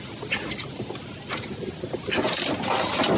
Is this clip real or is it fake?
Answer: real